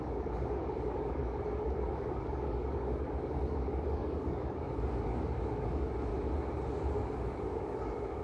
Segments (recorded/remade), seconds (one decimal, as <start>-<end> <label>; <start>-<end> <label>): 0.0-6.1 remade; 6.1-6.7 recorded; 6.7-8.2 remade